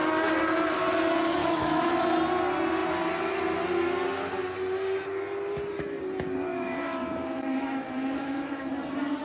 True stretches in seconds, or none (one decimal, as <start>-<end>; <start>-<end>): 0.0-1.4; 1.9-6.5; 8.7-9.2